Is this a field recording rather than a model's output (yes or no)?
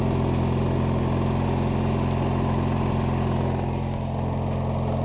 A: yes